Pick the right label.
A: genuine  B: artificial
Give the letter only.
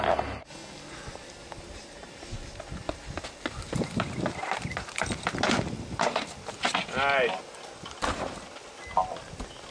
A